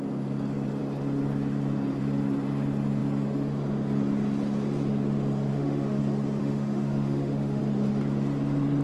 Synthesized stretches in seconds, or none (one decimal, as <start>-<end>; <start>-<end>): 5.5-6.0; 6.4-7.6